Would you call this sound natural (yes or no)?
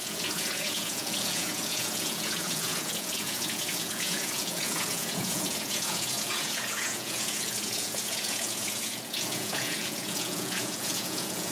no